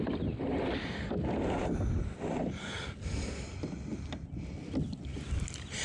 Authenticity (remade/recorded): recorded